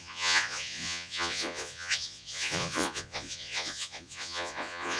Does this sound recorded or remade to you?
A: remade